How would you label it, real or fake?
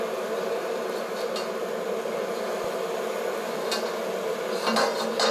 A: real